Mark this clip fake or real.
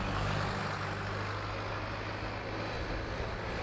real